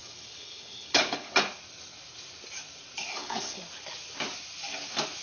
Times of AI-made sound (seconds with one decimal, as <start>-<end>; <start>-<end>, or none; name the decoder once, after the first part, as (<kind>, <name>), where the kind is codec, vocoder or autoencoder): 0.0-1.3 (codec, HILCodec); 3.1-3.6